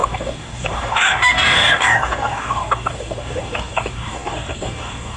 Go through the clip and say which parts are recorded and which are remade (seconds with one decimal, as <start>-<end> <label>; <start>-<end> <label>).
0.0-5.2 remade